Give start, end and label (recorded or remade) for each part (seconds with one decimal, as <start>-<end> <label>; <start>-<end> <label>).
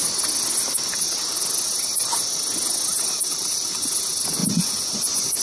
0.0-4.4 recorded; 4.4-5.4 remade